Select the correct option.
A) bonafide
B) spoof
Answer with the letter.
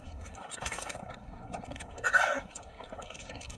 B